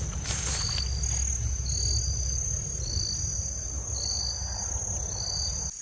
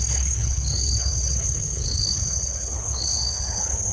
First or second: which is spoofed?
second